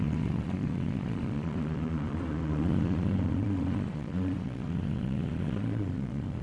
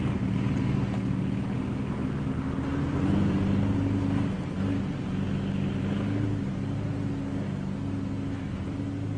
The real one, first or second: second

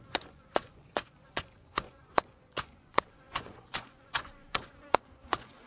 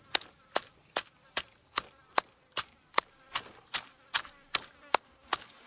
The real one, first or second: second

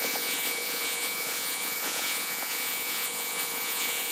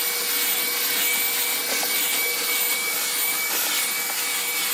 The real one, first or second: second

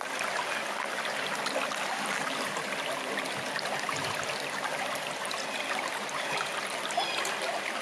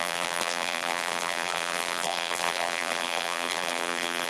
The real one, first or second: first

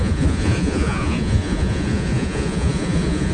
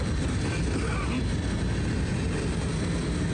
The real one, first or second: second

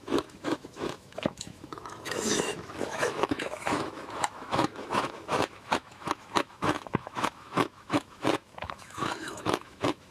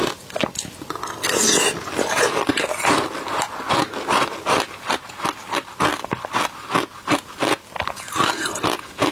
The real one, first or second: second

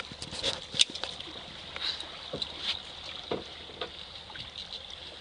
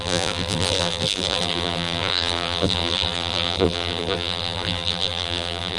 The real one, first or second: first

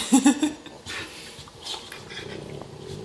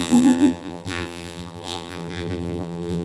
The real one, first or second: first